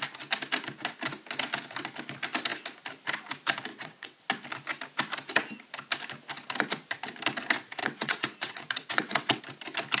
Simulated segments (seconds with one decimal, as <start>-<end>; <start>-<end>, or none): 3.7-4.2; 7.8-9.4